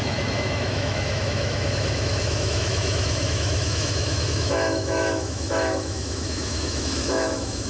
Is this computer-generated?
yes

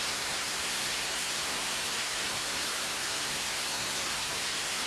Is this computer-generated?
yes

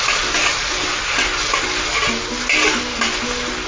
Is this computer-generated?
no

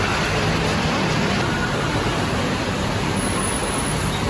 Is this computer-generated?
no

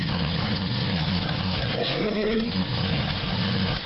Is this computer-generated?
yes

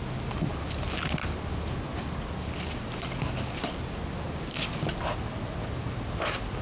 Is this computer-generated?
no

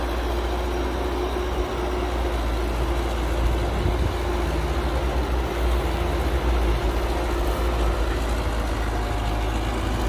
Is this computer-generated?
no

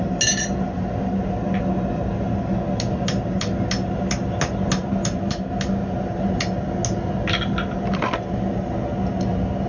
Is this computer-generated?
no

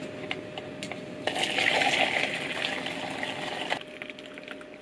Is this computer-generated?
no